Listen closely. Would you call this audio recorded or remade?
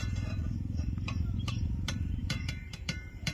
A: remade